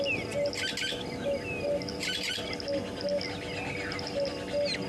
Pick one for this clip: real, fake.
real